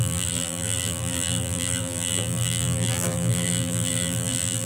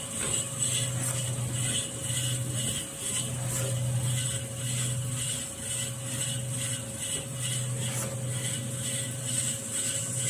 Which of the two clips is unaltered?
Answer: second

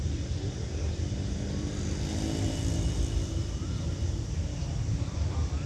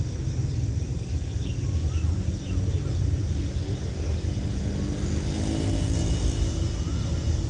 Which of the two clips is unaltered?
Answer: second